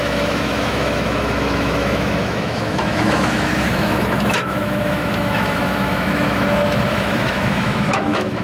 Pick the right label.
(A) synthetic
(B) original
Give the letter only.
A